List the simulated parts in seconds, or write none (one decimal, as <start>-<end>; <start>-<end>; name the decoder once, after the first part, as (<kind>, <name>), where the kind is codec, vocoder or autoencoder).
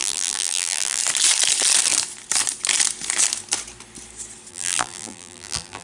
0.0-1.0 (vocoder, BigVGAN v2); 4.5-5.8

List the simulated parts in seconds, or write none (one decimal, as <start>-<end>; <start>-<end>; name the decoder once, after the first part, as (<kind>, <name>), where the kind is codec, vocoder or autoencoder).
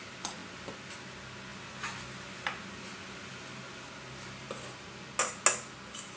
none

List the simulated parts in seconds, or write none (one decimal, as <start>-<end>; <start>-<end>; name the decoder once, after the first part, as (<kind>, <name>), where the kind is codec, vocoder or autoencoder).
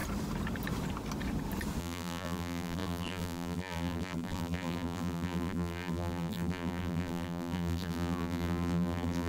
1.8-9.3 (vocoder, BigVGAN v2)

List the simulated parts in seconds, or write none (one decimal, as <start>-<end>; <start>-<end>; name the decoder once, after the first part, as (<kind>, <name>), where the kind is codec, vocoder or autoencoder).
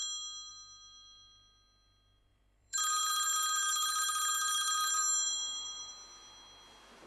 2.3-5.9 (vocoder, BigVGAN v2)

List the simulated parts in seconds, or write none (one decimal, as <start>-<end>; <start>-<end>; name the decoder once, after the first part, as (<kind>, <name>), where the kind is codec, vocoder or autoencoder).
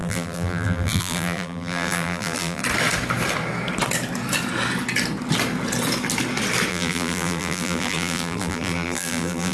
0.0-2.6 (vocoder, BigVGAN v2); 6.7-9.5